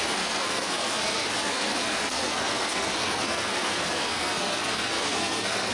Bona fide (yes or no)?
no